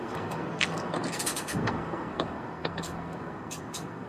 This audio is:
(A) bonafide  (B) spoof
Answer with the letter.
B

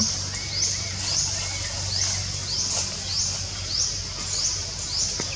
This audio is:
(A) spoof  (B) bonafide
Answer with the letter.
B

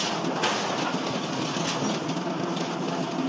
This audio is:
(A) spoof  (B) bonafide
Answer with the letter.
B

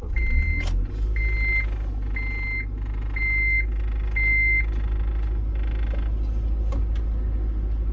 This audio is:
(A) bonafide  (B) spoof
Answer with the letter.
A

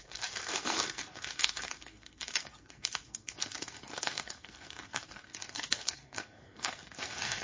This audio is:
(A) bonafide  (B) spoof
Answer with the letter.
B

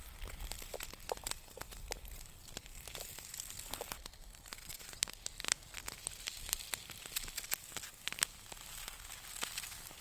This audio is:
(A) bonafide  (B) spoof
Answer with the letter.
A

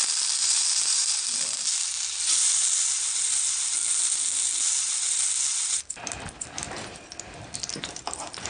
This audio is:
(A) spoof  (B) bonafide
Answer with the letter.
B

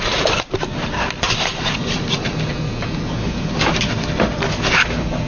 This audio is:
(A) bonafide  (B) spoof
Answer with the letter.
A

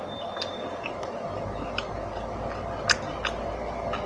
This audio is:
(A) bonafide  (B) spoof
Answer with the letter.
A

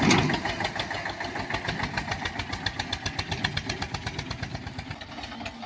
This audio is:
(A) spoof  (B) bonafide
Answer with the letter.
B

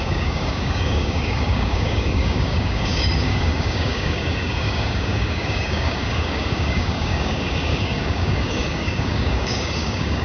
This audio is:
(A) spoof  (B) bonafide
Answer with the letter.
A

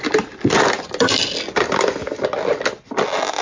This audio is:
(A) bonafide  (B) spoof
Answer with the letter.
A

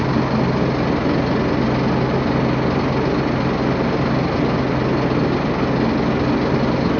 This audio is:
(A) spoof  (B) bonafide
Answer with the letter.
B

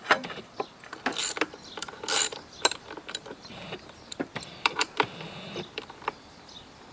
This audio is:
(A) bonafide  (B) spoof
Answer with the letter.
B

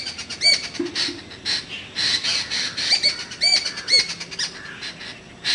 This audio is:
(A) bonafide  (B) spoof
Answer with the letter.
A